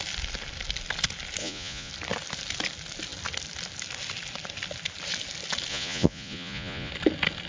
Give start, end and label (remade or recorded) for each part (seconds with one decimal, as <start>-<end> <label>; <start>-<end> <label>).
0.0-1.4 recorded; 1.4-1.9 remade; 1.9-5.7 recorded; 5.7-6.9 remade; 6.9-7.5 recorded